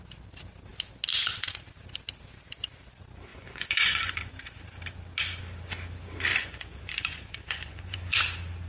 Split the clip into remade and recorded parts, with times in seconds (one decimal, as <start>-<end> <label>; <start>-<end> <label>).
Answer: 0.0-3.3 recorded; 3.3-4.3 remade; 4.3-6.3 recorded; 6.3-8.2 remade; 8.2-8.7 recorded